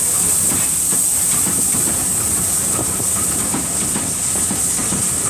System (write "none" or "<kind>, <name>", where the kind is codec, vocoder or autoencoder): none